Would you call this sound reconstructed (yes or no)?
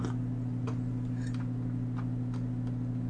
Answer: no